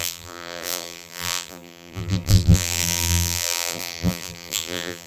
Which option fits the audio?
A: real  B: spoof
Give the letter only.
B